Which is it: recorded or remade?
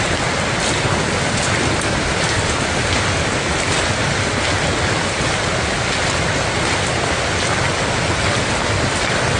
recorded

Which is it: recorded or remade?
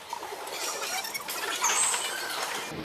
recorded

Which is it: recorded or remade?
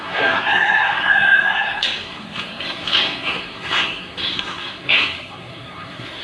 remade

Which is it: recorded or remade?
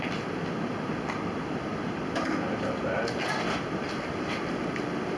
recorded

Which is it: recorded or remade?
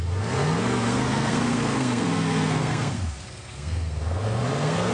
remade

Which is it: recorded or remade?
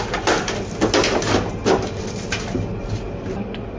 recorded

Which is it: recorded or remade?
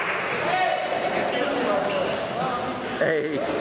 recorded